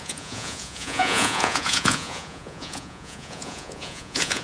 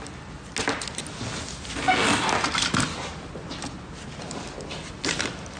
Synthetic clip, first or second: first